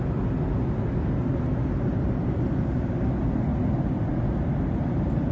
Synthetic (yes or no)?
no